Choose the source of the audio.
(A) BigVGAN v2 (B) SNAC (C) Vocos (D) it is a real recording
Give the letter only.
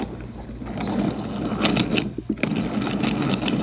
D